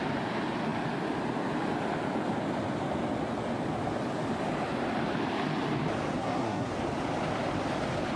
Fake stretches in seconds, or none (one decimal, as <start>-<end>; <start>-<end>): 6.2-6.7